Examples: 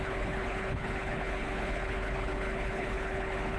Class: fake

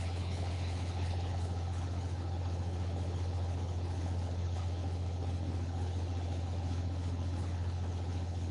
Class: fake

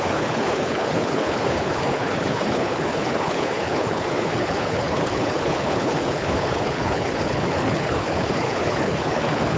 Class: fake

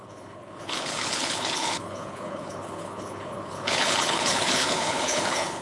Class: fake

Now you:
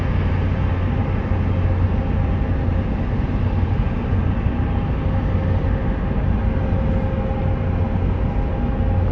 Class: real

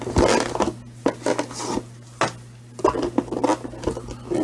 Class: real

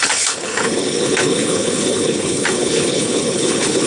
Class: fake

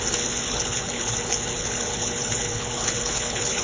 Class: fake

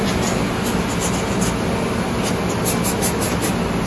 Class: real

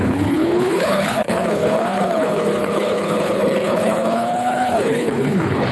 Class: fake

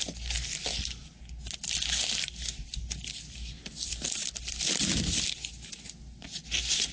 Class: real